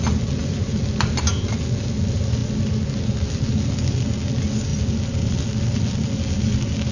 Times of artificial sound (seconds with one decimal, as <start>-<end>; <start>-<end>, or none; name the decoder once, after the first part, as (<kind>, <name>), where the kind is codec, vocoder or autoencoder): none